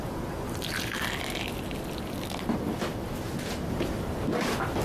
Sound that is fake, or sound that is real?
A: real